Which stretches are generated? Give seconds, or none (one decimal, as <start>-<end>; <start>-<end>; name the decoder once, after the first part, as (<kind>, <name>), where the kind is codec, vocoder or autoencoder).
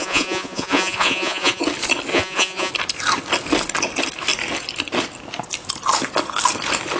0.0-1.6 (vocoder, Vocos); 2.1-2.7